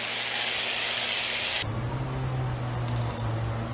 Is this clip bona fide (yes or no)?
yes